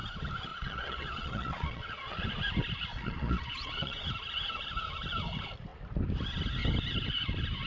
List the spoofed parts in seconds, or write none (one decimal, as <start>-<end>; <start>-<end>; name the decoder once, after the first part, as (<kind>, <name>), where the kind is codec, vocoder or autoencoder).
0.5-2.2 (vocoder, Vocos); 2.9-4.1